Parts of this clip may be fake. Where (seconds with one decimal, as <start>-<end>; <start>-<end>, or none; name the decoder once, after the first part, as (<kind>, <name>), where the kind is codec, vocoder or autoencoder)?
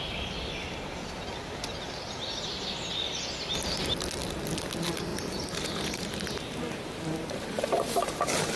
5.1-8.1 (vocoder, BigVGAN v2)